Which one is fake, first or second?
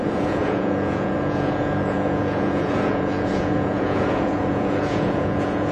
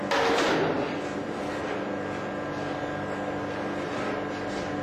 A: first